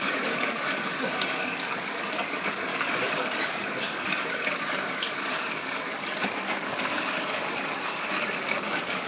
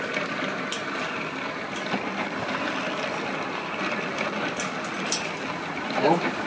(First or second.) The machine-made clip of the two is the first